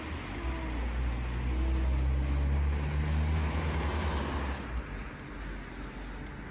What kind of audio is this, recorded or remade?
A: recorded